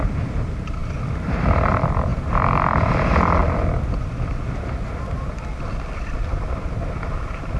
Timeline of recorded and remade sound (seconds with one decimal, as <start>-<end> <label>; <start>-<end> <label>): 0.0-0.8 recorded; 0.8-1.7 remade; 1.7-3.4 recorded; 3.4-6.6 remade; 6.6-7.6 recorded